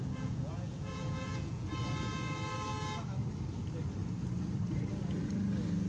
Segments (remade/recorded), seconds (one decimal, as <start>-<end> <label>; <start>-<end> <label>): 0.0-1.7 remade; 1.7-5.9 recorded